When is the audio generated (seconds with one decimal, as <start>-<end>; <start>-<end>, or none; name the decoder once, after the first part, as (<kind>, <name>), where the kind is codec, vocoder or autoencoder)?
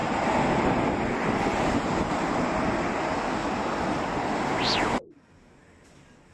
none